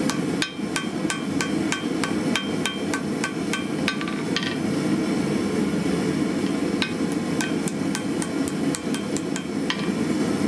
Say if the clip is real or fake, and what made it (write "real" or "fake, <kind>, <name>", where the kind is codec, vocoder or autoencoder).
real